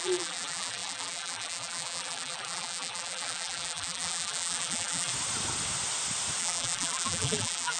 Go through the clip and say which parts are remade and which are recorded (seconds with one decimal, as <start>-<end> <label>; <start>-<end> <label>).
0.0-5.1 remade; 5.1-6.4 recorded; 6.4-7.8 remade